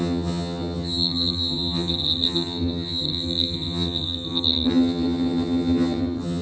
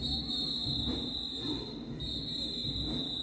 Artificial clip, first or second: first